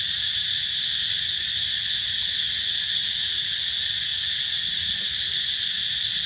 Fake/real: real